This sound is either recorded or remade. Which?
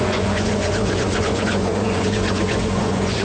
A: remade